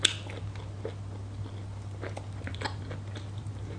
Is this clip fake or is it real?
real